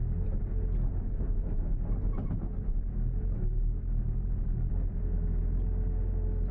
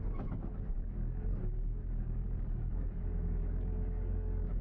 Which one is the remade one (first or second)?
second